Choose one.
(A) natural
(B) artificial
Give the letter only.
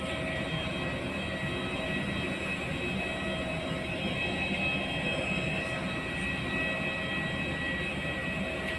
A